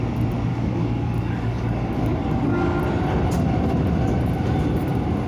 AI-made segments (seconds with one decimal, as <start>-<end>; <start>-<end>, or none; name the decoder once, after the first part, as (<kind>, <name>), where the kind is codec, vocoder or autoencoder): 0.5-2.8 (codec, DAC)

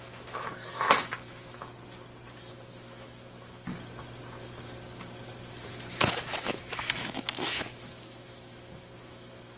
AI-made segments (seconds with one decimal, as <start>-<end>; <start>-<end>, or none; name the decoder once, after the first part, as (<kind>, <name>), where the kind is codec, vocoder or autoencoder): 0.0-1.7 (autoencoder, DAC-VAE); 2.5-3.7; 6.0-9.6

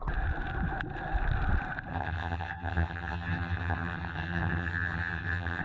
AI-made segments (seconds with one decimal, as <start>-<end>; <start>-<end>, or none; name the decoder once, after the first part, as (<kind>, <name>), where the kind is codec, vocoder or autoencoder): 1.9-5.6 (vocoder, HiFi-GAN)

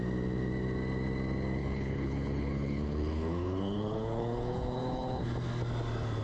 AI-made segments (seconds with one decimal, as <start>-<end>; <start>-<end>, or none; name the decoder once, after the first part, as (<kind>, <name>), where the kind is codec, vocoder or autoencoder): 1.6-5.3 (codec, HILCodec)

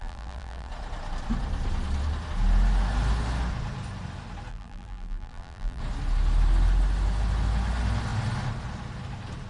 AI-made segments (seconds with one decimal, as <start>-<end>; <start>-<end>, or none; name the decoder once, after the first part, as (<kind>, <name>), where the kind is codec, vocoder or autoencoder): 0.0-0.7 (vocoder, BigVGAN v2); 4.5-5.8

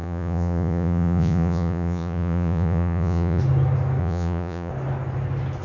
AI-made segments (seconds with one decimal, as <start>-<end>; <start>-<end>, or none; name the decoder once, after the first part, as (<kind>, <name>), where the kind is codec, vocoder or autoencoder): 0.0-3.4 (vocoder, Vocos); 4.0-4.7